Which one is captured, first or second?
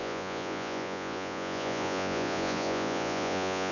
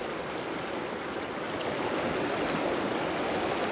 second